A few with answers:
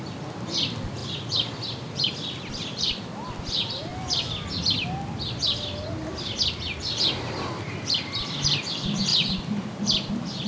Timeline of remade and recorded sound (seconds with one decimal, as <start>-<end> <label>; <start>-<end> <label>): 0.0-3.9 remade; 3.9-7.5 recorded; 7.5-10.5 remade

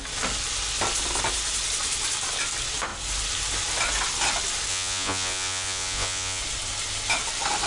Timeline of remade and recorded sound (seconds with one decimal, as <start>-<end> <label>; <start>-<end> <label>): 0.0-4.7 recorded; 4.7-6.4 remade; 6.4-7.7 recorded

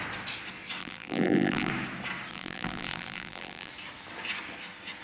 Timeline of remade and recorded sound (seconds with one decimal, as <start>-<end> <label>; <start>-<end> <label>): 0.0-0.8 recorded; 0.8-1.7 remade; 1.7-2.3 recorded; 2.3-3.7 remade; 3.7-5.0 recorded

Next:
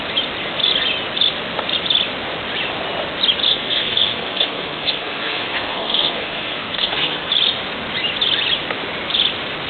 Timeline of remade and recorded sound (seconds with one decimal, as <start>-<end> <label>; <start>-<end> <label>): 0.0-3.5 recorded; 3.5-7.3 remade; 7.3-9.7 recorded

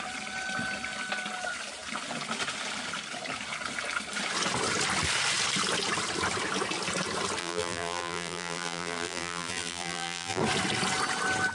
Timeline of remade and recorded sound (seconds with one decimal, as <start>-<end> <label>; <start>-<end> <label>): 0.0-7.4 recorded; 7.4-10.4 remade; 10.4-11.5 recorded

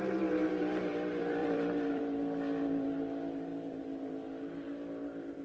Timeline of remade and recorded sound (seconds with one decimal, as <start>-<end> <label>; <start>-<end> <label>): 0.0-1.4 recorded; 1.4-2.0 remade; 2.0-5.4 recorded

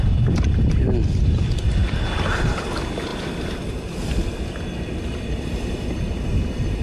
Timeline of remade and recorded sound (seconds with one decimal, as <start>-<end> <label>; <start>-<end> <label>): 0.0-6.8 recorded